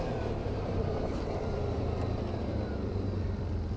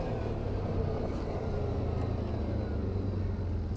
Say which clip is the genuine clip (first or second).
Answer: second